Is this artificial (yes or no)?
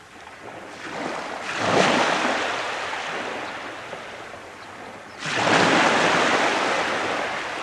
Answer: no